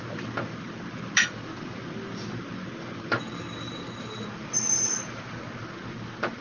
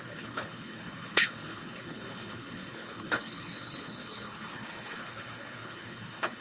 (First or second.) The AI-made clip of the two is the second